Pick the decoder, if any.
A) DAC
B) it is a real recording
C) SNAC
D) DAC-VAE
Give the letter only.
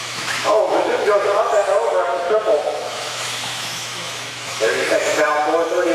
D